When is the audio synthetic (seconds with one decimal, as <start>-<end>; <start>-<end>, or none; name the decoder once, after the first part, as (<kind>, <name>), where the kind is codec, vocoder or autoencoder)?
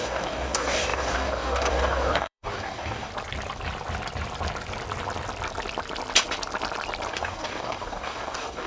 0.0-3.1 (codec, DAC); 7.1-8.7